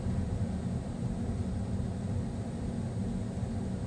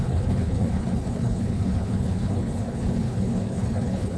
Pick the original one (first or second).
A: first